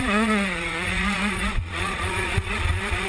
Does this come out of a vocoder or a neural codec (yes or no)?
yes